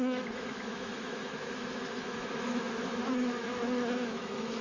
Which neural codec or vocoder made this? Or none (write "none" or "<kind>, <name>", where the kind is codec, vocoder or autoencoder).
autoencoder, DAC-VAE